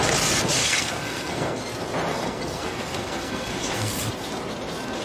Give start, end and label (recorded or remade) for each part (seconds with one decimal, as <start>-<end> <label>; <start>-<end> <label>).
0.0-0.6 recorded; 0.6-1.6 remade; 1.6-2.1 recorded; 2.1-4.1 remade; 4.1-5.0 recorded